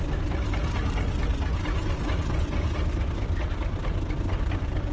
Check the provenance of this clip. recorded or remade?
recorded